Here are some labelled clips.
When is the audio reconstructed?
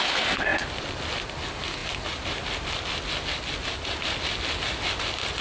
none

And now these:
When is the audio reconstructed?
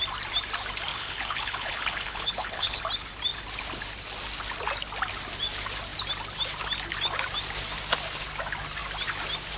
0.9-2.8 (codec, HILCodec)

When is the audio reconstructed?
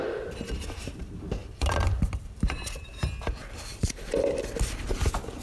1.4-2.9 (vocoder, BigVGAN v2)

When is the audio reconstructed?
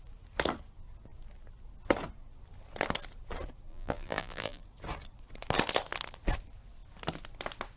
3.7-4.6 (vocoder, BigVGAN v2)